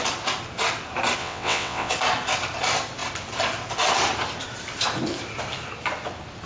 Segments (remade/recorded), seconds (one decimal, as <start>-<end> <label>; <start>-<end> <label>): 0.0-1.2 recorded; 1.2-1.9 remade; 1.9-6.5 recorded

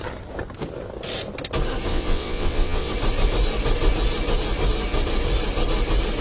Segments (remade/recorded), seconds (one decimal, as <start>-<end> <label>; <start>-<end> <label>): 0.0-1.9 recorded; 1.9-2.9 remade; 2.9-6.2 recorded

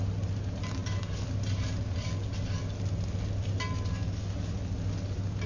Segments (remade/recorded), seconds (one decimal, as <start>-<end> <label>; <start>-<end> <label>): 0.0-5.5 recorded

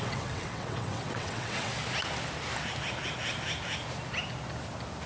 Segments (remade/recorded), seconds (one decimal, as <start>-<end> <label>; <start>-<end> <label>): 0.0-1.7 remade; 1.7-5.1 recorded

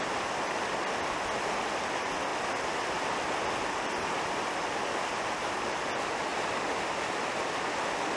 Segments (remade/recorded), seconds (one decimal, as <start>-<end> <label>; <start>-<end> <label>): 0.0-8.2 recorded